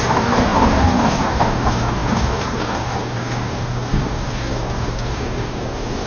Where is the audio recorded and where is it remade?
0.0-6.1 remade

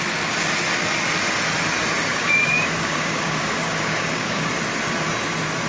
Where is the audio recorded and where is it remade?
0.0-2.1 recorded; 2.1-4.5 remade; 4.5-5.7 recorded

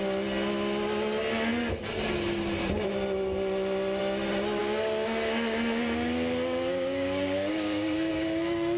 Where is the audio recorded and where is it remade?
0.0-4.6 recorded; 4.6-8.8 remade

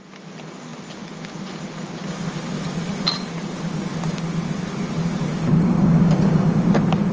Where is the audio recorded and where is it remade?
0.0-5.3 recorded; 5.3-6.6 remade; 6.6-7.1 recorded